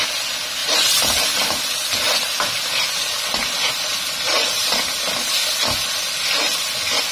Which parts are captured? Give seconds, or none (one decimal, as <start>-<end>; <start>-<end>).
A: 0.0-0.6; 2.4-7.1